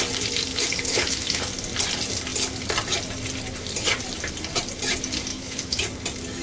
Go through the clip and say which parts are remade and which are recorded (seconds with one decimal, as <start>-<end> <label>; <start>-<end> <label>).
0.0-0.5 recorded; 0.5-1.4 remade; 1.4-5.3 recorded; 5.3-5.8 remade; 5.8-6.4 recorded